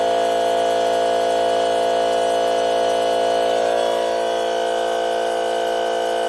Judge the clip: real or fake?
real